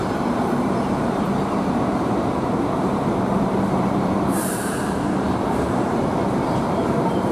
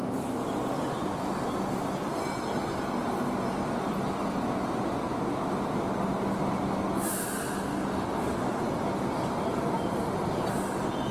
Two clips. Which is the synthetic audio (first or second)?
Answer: first